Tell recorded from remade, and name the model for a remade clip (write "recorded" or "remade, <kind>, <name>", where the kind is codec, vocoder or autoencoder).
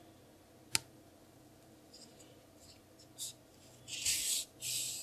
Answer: recorded